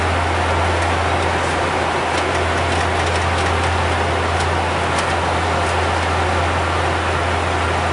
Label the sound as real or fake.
real